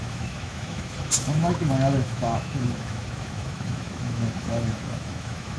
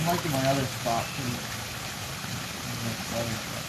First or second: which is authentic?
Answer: second